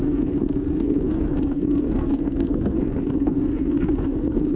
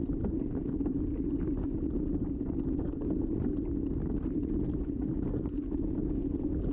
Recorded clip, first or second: second